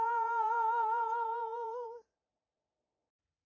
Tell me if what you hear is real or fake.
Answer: fake